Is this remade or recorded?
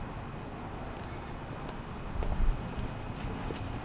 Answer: recorded